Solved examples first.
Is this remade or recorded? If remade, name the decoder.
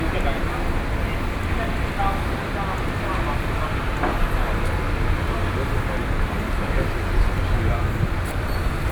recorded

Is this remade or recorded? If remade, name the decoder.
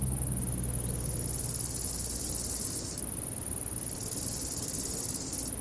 recorded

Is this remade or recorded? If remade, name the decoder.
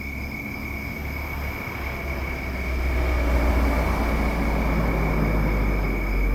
recorded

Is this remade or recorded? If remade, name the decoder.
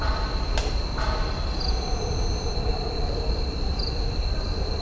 remade, vocoder, BigVGAN v2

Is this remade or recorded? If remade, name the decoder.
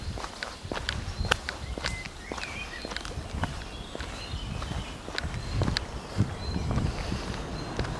recorded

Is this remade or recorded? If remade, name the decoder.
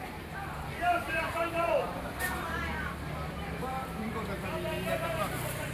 remade, vocoder, BigVGAN v2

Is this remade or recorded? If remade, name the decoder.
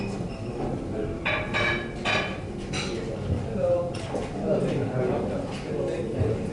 recorded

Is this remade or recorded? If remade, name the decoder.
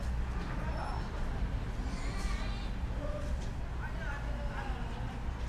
recorded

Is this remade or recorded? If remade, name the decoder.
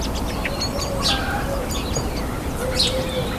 recorded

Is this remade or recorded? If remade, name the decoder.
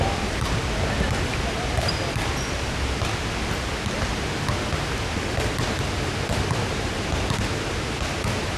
recorded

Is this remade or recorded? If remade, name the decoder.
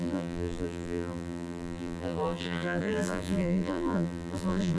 remade, vocoder, BigVGAN v2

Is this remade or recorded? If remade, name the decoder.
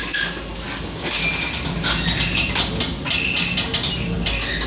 recorded